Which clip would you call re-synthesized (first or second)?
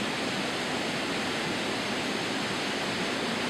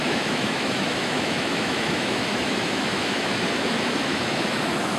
second